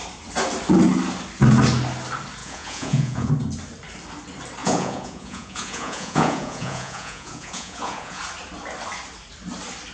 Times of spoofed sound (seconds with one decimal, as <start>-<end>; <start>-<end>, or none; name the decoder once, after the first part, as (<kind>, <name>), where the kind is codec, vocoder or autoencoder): 2.4-3.3 (vocoder, Vocos); 4.6-8.2